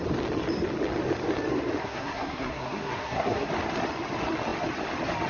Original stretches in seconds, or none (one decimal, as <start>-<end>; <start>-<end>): 0.0-1.8; 3.5-5.3